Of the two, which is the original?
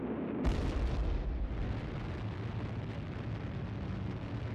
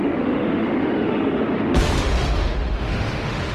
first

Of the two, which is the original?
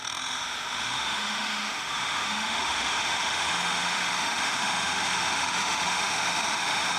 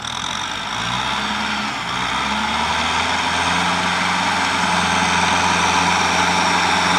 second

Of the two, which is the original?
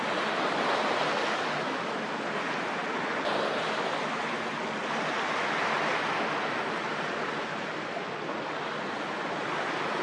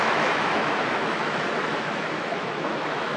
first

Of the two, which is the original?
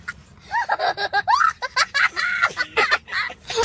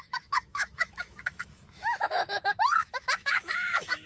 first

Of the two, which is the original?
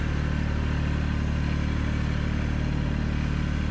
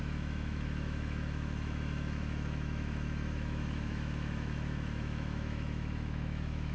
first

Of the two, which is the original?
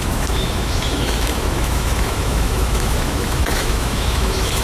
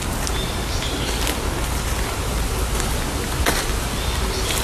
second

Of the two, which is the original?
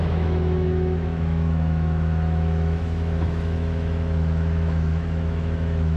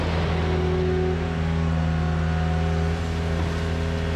second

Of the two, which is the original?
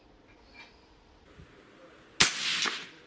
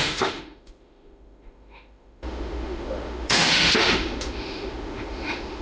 first